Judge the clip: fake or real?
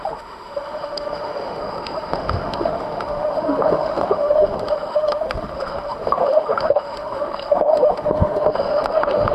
fake